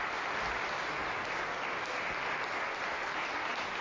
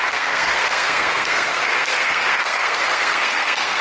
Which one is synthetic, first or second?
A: second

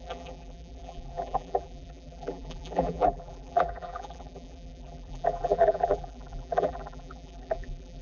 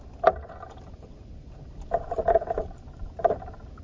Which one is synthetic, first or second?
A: first